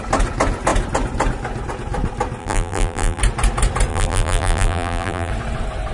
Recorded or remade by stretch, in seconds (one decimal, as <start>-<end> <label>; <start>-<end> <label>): 0.0-2.4 recorded; 2.4-3.2 remade; 3.2-3.9 recorded; 3.9-5.3 remade; 5.3-5.9 recorded